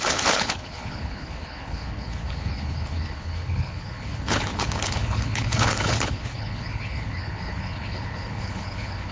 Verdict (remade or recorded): remade